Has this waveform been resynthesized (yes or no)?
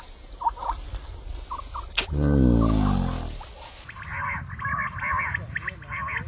no